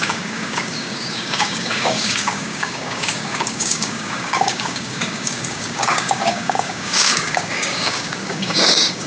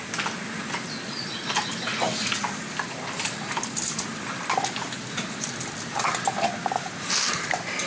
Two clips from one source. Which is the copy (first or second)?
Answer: first